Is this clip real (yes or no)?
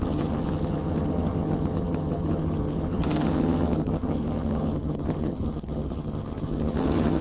no